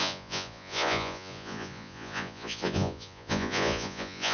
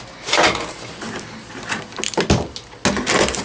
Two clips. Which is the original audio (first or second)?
second